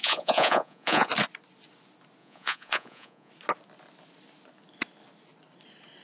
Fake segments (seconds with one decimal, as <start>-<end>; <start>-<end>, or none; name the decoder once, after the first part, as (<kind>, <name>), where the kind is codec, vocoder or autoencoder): 0.0-1.1 (vocoder, Vocos); 2.2-3.3